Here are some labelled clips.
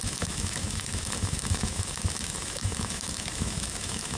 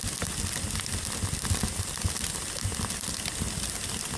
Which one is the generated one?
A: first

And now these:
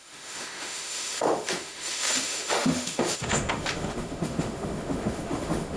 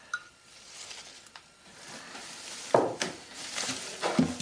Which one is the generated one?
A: first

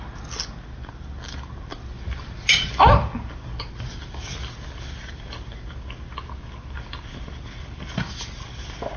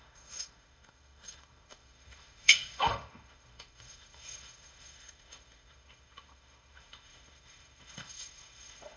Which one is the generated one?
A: second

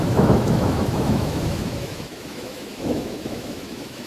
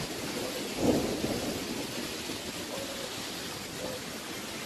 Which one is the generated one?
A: first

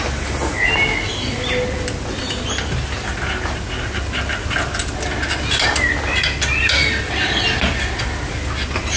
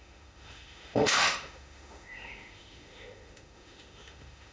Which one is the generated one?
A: second